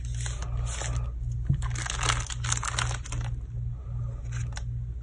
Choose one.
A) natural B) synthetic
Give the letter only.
A